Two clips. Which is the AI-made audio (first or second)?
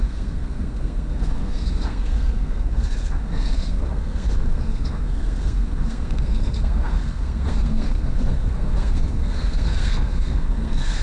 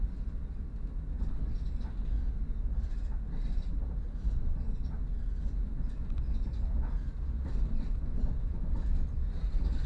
first